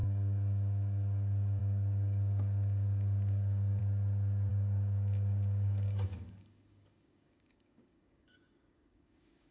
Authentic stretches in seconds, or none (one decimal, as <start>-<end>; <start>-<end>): 3.8-4.5